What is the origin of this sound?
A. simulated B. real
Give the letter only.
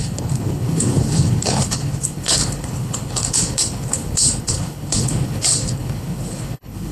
A